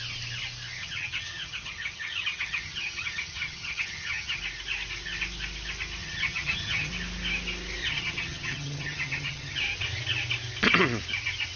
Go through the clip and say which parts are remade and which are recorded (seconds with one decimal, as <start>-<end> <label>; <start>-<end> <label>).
0.0-0.8 recorded; 0.8-4.4 remade; 4.4-6.0 recorded; 6.0-6.9 remade; 6.9-7.8 recorded; 7.8-9.6 remade; 9.6-11.6 recorded